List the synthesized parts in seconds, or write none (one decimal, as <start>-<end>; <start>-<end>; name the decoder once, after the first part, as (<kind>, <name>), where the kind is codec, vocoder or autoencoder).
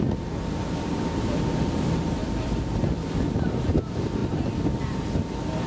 2.2-3.8 (vocoder, BigVGAN v2)